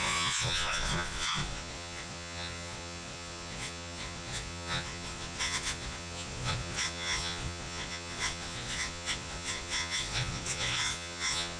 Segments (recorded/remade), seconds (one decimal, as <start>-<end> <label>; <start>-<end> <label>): 0.0-11.6 remade